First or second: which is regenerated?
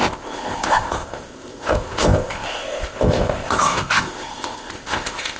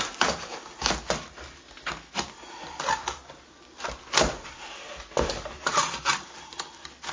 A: first